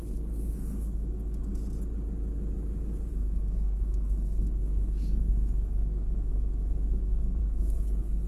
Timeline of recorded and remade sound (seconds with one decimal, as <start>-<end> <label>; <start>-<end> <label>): 0.0-1.5 remade; 1.5-3.1 recorded; 3.1-8.3 remade